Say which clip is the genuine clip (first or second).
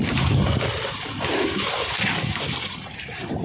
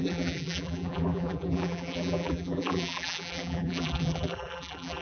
first